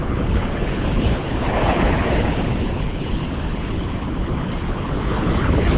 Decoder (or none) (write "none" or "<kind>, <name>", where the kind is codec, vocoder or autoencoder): codec, HILCodec